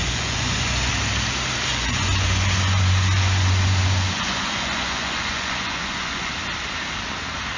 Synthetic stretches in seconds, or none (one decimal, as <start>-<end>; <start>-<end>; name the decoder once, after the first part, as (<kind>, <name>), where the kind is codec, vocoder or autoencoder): 0.0-0.9 (vocoder, Vocos); 1.7-6.3